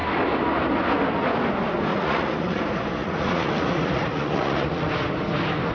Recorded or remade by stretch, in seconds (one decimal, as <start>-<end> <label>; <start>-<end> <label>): 0.0-1.9 recorded; 1.9-2.6 remade; 2.6-3.0 recorded; 3.0-4.9 remade; 4.9-5.7 recorded